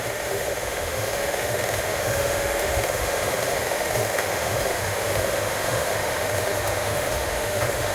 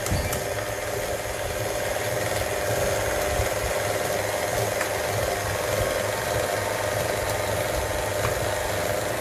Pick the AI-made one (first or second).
first